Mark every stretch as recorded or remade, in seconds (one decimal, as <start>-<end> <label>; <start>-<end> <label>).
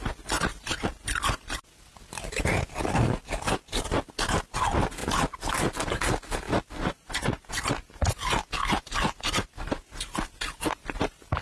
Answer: 0.0-11.4 recorded